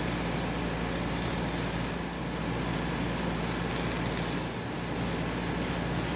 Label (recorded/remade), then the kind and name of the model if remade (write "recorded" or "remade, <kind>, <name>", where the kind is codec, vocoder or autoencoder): recorded